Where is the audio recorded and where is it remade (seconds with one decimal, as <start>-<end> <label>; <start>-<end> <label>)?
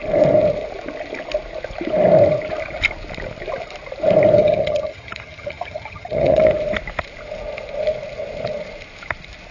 0.0-4.4 recorded; 4.4-6.5 remade; 6.5-9.5 recorded